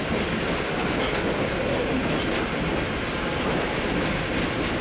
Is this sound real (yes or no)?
yes